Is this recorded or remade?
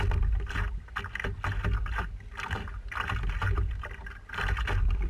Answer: recorded